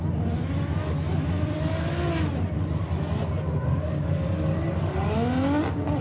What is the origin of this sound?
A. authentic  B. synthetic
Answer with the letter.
A